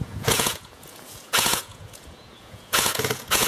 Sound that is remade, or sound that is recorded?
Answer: remade